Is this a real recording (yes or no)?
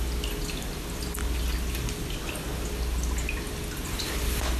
yes